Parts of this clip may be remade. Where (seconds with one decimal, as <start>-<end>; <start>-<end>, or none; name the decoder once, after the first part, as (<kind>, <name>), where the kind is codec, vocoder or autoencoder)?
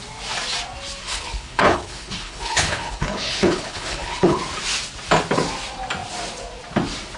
1.0-4.4 (codec, HILCodec)